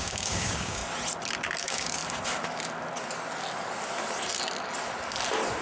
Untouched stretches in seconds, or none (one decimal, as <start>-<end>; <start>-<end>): 0.8-1.6; 2.0-5.6